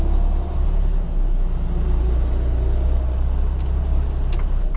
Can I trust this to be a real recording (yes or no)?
yes